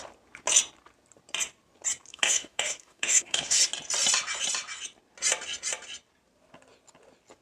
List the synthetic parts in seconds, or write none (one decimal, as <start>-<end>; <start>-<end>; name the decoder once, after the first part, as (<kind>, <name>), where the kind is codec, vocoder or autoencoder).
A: 2.1-3.6 (autoencoder, DAC-VAE)